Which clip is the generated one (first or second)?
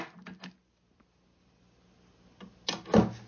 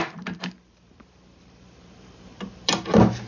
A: second